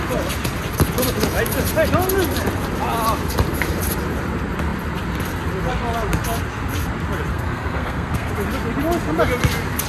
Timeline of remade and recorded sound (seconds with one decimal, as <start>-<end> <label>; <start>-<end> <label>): 0.0-7.3 recorded; 7.3-8.3 remade; 8.3-9.9 recorded